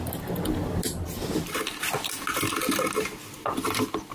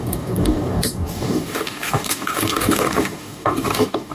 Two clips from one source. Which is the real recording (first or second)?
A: first